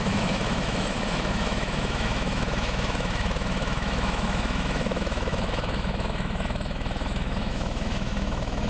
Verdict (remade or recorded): remade